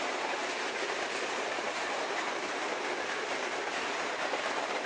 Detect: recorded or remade remade